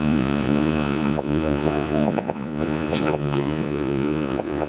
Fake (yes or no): yes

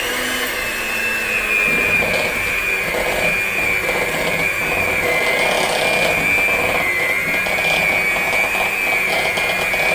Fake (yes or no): no